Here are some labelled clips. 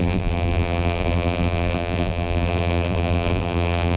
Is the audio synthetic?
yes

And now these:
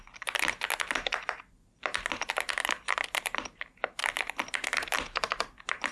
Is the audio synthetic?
no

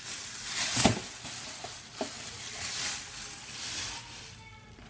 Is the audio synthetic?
no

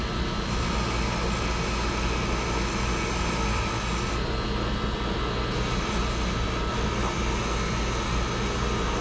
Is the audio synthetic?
no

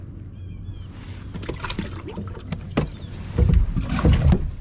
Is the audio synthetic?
no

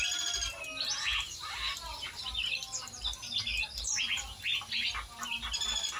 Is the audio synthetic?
no